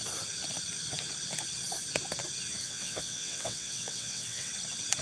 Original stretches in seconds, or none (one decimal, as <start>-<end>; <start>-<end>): 0.0-2.6; 4.5-5.0